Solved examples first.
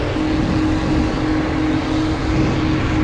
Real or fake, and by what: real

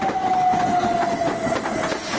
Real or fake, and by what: real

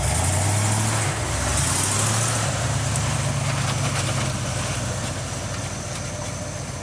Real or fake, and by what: real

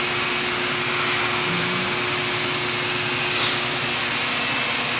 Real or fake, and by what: real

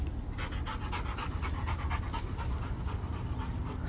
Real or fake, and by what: real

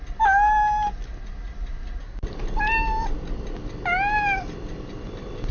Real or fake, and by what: real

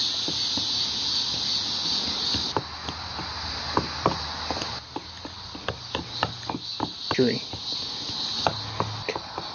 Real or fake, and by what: real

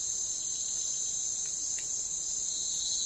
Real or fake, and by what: real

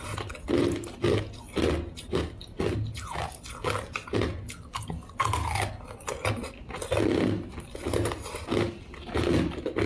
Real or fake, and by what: real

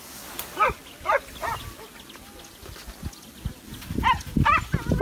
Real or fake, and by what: real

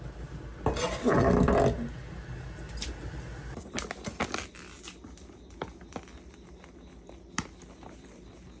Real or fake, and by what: real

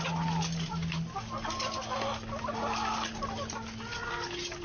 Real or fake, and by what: real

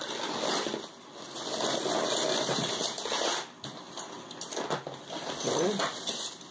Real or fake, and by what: real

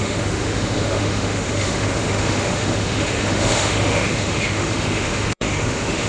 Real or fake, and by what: fake, autoencoder, DAC-VAE